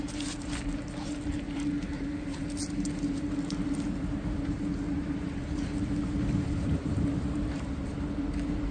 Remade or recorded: recorded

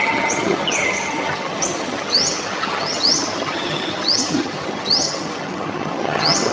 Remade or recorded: remade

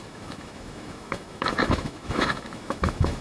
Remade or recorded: remade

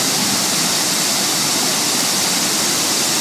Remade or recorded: recorded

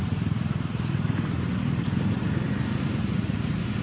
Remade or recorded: remade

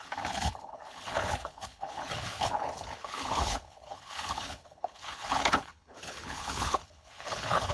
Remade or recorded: remade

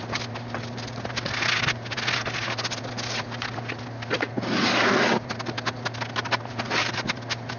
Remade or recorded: recorded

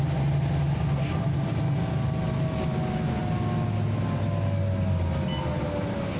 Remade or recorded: recorded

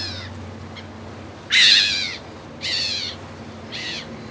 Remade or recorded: recorded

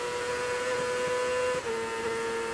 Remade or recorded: recorded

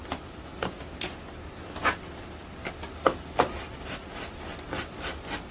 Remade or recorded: recorded